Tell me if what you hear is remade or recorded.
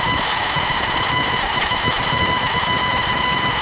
recorded